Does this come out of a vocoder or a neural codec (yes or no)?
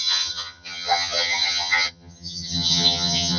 yes